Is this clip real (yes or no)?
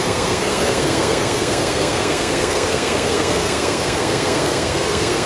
no